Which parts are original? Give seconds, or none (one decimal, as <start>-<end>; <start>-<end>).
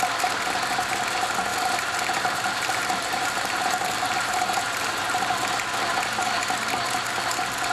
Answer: 0.0-1.5; 4.9-7.7